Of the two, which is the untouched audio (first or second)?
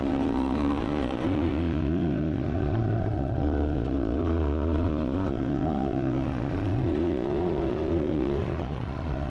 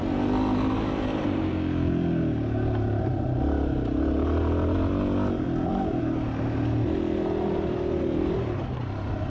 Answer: second